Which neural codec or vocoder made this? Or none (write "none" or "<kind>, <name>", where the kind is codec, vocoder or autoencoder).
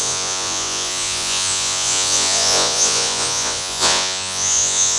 vocoder, Vocos